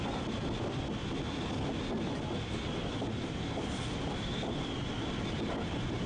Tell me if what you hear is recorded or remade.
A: recorded